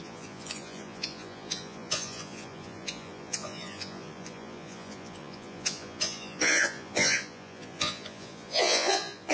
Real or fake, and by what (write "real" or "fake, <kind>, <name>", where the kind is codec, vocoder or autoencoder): fake, vocoder, Vocos